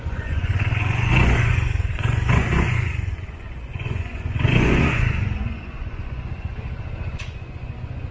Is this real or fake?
fake